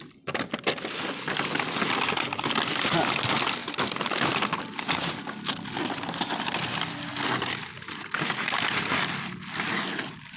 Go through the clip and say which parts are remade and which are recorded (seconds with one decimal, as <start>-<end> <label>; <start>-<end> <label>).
0.0-10.4 recorded